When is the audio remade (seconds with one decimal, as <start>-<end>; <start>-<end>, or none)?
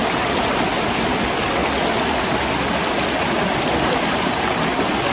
none